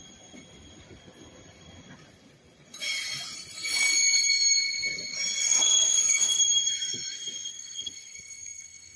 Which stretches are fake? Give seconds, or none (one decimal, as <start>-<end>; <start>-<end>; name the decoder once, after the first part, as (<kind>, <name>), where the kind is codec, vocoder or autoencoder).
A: 5.4-6.4 (codec, SNAC); 7.5-9.0